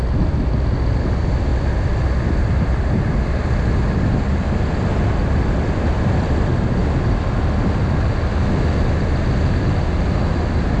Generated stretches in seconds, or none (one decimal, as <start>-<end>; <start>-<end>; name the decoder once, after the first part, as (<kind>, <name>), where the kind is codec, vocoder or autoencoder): 0.0-6.8 (vocoder, BigVGAN v2); 10.3-10.8